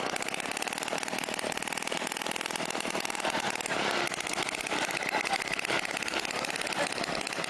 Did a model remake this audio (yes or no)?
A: no